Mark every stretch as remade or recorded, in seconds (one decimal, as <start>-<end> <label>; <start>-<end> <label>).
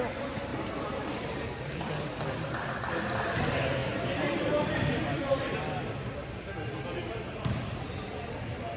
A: 0.0-0.5 recorded; 0.5-1.9 remade; 1.9-3.8 recorded; 3.8-5.4 remade; 5.4-8.8 recorded